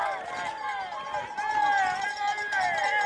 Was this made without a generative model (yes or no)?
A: yes